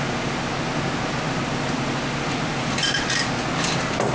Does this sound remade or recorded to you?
recorded